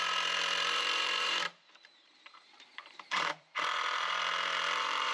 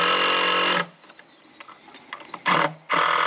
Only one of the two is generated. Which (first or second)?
first